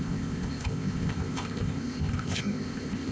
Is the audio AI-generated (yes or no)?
yes